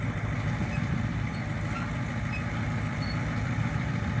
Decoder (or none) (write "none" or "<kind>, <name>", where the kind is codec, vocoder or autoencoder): vocoder, BigVGAN v2